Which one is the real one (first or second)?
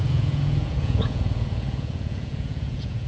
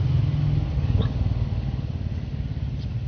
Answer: second